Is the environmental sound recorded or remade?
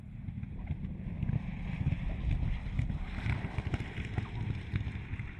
recorded